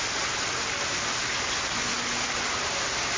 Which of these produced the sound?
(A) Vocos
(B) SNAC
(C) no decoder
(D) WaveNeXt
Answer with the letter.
C